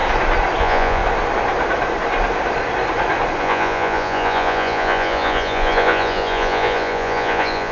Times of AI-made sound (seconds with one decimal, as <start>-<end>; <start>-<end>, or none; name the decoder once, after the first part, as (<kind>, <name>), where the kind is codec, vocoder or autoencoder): 0.6-1.0 (vocoder, Vocos); 3.4-7.7